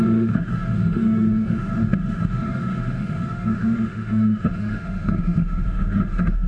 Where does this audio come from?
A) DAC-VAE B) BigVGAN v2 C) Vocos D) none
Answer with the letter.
A